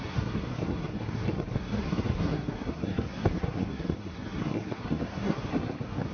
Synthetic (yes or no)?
yes